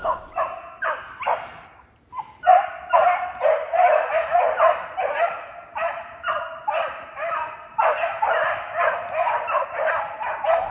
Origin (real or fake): real